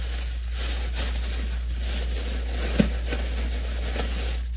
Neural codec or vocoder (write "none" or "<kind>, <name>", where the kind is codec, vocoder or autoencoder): none